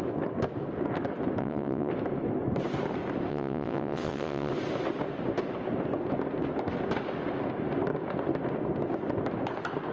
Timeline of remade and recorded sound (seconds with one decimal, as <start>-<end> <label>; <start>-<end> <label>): 0.0-1.4 recorded; 1.4-1.9 remade; 1.9-3.3 recorded; 3.3-4.5 remade; 4.5-9.9 recorded